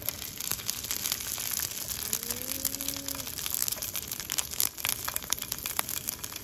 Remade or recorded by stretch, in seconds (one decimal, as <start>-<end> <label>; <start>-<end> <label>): 0.0-3.6 recorded; 3.6-4.8 remade; 4.8-6.4 recorded